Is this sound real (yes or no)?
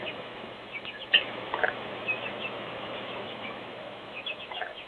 no